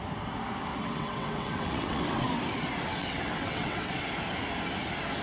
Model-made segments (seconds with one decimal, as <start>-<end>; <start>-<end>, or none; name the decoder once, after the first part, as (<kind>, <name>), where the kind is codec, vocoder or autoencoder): 0.7-2.4 (vocoder, WaveNeXt); 3.0-3.9